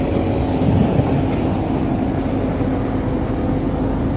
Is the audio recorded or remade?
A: recorded